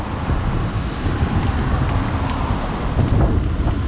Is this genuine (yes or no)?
yes